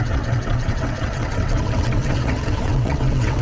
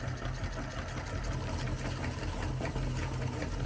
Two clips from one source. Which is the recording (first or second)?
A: second